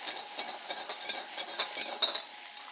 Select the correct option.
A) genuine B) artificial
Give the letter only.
A